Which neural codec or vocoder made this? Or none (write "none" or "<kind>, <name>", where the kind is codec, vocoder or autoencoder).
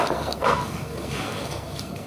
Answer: codec, SNAC